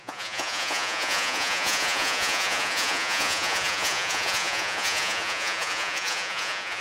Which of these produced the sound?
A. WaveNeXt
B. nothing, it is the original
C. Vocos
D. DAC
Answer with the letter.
C